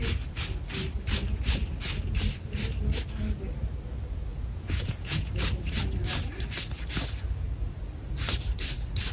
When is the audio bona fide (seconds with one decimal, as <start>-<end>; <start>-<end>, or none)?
0.0-4.3; 5.3-9.1